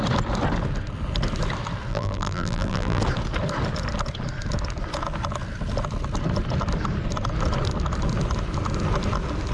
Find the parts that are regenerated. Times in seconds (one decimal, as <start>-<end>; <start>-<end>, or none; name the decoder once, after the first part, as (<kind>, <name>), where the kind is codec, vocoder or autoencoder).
1.9-3.0 (vocoder, BigVGAN v2)